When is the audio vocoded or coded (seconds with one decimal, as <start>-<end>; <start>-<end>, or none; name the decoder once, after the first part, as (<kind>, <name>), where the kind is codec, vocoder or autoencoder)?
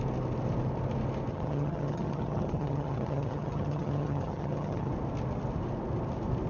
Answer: 1.3-4.9 (vocoder, HiFi-GAN)